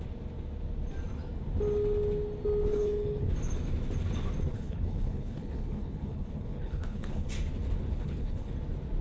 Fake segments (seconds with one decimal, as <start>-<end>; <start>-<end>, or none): 2.7-3.3; 4.5-7.3; 7.9-8.5